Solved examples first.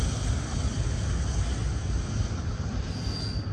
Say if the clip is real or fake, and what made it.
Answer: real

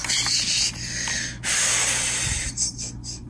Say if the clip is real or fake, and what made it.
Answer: real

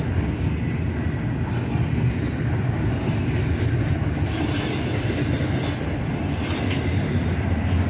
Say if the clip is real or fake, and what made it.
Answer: real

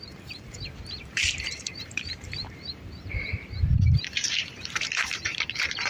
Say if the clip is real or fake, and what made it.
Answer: fake, vocoder, BigVGAN v2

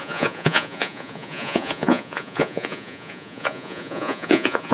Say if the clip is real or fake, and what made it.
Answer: fake, vocoder, Vocos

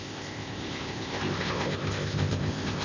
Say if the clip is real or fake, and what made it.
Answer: fake, codec, ZipCodec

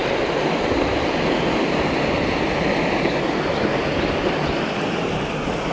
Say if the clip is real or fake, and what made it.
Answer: real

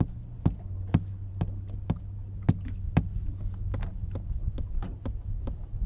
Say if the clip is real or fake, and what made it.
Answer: real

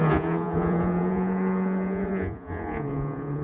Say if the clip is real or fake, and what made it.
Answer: fake, vocoder, Vocos